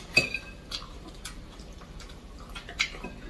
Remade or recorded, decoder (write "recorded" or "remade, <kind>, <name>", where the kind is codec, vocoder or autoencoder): remade, vocoder, BigVGAN v2